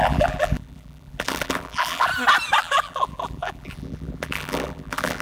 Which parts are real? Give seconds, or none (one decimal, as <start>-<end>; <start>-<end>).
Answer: 2.1-2.6